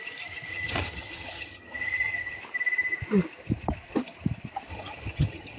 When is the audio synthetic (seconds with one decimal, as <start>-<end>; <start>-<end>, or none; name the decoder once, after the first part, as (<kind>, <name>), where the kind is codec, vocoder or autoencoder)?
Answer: 0.5-2.4 (vocoder, HiFi-GAN); 4.7-5.6